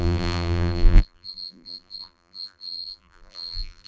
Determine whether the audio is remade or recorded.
remade